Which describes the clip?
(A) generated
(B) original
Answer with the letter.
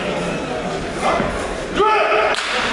B